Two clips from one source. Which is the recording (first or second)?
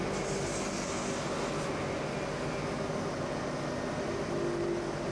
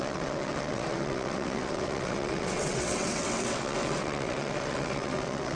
first